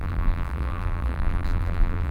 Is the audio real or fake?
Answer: fake